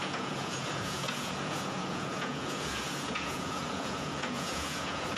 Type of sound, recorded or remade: remade